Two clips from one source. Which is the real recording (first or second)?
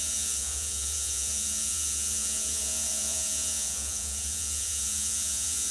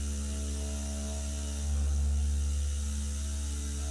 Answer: second